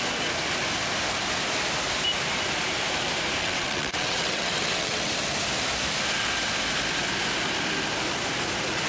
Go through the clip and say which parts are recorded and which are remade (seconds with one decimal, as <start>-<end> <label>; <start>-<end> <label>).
0.0-3.4 recorded; 3.4-5.1 remade; 5.1-8.9 recorded